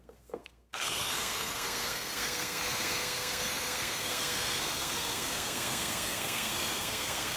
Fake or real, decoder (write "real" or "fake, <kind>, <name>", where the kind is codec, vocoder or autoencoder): fake, codec, SNAC